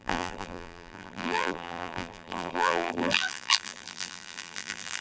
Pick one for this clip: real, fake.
fake